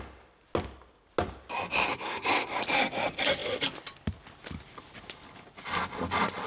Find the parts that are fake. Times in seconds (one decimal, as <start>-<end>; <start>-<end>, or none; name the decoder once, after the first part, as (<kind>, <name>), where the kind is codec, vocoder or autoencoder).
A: 1.9-2.6 (codec, SNAC)